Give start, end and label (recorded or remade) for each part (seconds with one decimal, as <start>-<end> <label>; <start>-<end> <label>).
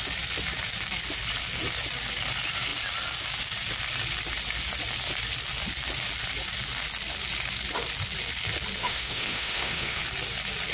0.0-8.8 recorded; 8.8-10.0 remade; 10.0-10.7 recorded